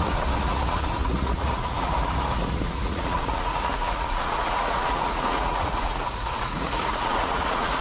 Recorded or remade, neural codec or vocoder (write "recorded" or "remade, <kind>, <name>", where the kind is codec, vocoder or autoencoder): remade, vocoder, Vocos